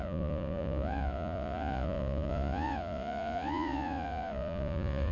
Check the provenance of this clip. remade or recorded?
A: remade